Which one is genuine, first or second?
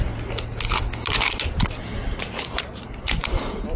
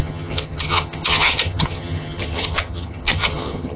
first